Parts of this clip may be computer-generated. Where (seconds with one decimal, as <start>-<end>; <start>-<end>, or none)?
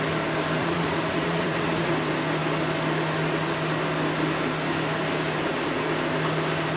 0.6-1.9